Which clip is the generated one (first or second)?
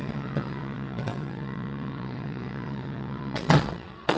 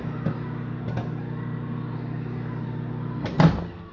first